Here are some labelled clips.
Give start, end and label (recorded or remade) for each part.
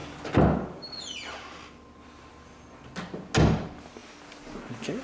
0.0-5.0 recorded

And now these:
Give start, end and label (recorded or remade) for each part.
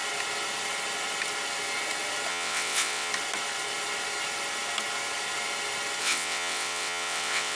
0.0-2.3 recorded; 2.3-3.1 remade; 3.1-6.0 recorded; 6.0-7.5 remade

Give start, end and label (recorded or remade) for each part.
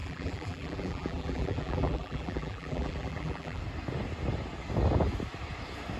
0.0-3.6 remade; 3.6-6.0 recorded